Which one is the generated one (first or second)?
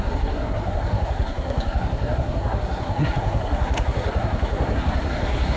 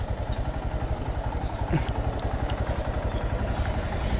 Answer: first